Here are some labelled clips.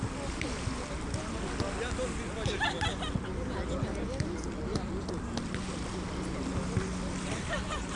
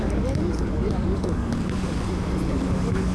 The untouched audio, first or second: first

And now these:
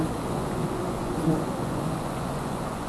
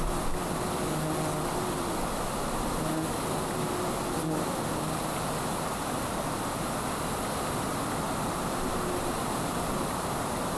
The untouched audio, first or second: second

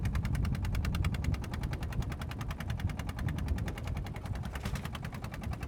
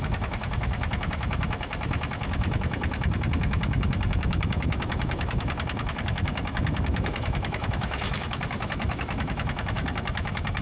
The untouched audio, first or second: first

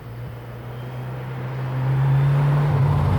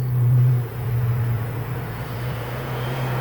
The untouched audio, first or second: first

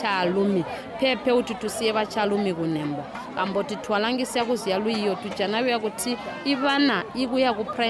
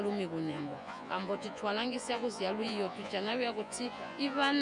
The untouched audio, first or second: first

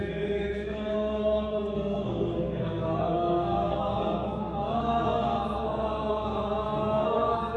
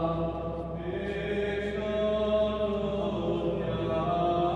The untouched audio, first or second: second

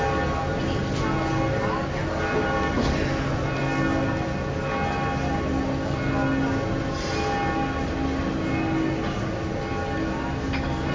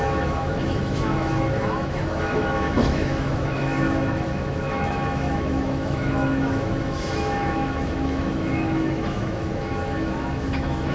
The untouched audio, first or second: first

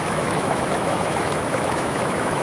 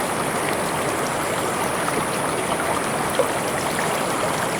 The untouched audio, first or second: second